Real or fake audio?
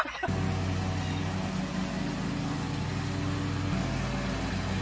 real